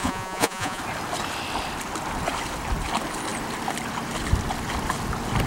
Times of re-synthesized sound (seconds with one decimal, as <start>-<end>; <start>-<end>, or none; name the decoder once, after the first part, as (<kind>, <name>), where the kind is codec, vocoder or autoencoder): 0.0-0.8 (vocoder, Vocos)